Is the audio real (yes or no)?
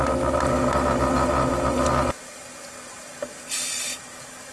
yes